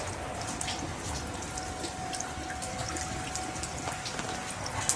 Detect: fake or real real